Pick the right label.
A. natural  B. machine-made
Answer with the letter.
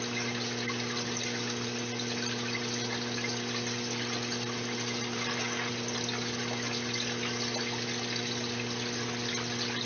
A